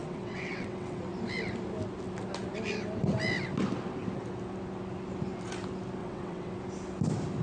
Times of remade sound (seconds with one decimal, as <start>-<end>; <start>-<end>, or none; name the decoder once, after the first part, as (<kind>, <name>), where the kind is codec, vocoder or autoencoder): 0.0-1.0 (vocoder, WaveNeXt); 6.0-6.5